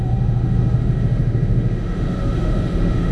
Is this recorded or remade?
remade